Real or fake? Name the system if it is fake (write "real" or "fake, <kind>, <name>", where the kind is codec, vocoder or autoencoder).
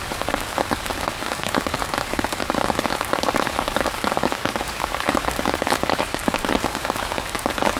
fake, codec, DAC